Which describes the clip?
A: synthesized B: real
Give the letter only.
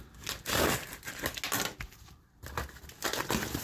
B